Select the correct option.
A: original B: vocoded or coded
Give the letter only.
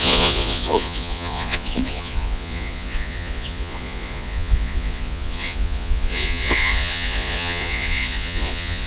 B